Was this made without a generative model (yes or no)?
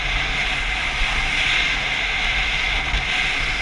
yes